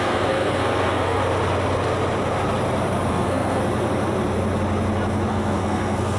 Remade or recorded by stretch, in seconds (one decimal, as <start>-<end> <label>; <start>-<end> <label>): 0.0-1.2 remade; 1.2-3.1 recorded; 3.1-3.6 remade; 3.6-5.3 recorded; 5.3-6.2 remade